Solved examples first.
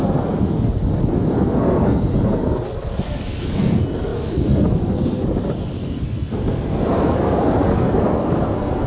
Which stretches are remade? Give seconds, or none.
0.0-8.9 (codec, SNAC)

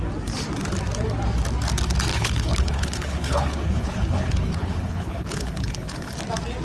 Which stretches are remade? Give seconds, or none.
2.1-6.1 (codec, HILCodec)

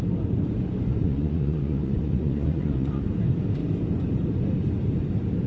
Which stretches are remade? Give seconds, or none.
0.9-3.0 (vocoder, Vocos)

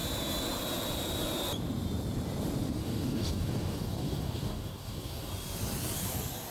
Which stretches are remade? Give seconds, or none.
2.8-5.3 (codec, DAC)